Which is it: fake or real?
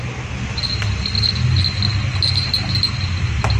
real